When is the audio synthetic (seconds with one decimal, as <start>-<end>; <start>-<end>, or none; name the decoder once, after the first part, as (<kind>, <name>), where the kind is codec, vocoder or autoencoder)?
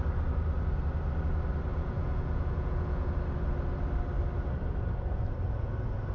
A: 1.7-3.1 (vocoder, Vocos)